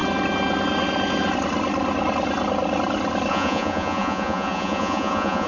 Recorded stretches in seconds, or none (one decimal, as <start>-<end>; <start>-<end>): 0.0-3.3